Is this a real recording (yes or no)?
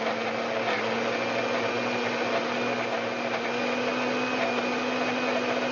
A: yes